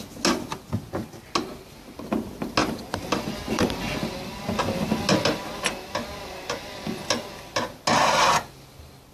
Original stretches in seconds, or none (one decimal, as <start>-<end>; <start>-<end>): 0.0-2.6; 3.8-9.1